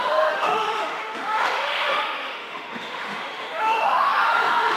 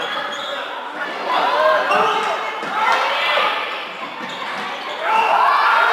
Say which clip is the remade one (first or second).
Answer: first